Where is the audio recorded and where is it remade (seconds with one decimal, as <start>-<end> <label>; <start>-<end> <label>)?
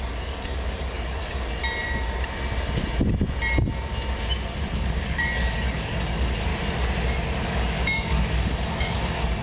0.0-1.6 remade; 1.6-4.7 recorded; 4.7-6.5 remade; 6.5-7.4 recorded; 7.4-9.4 remade